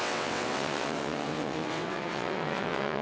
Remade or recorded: remade